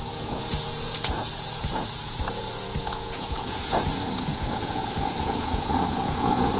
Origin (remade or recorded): remade